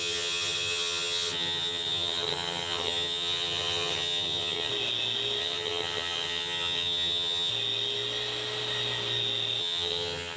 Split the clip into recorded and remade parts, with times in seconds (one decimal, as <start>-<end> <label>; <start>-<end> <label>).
0.0-4.7 remade; 4.7-5.4 recorded; 5.4-7.5 remade; 7.5-9.6 recorded; 9.6-10.4 remade